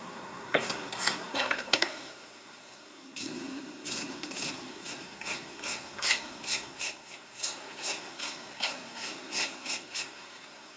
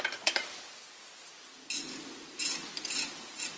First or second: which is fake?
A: first